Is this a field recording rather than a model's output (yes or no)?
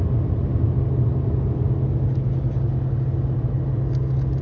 yes